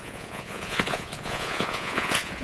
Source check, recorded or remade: remade